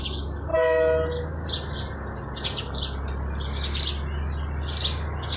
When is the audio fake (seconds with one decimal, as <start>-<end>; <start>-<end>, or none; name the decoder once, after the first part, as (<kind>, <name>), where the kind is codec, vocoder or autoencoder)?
none